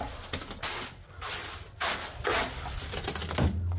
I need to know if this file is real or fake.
real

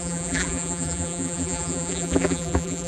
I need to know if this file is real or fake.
fake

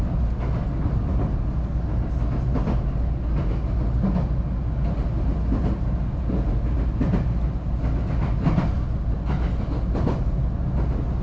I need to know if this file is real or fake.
real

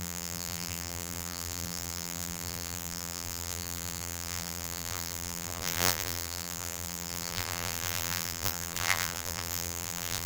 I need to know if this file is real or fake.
fake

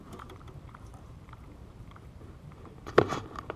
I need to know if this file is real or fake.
fake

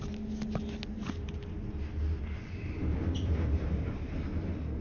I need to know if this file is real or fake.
real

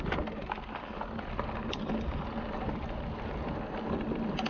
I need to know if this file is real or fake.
real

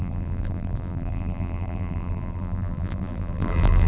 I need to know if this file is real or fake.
fake